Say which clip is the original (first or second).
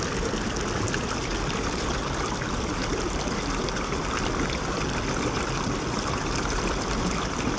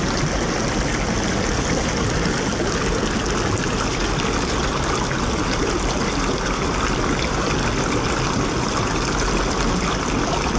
second